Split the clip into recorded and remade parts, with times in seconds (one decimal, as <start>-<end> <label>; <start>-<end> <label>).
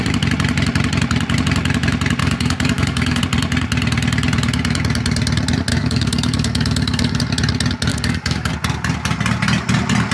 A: 0.0-2.2 recorded; 2.2-3.2 remade; 3.2-5.7 recorded; 5.7-7.2 remade; 7.2-7.9 recorded; 7.9-8.5 remade; 8.5-10.1 recorded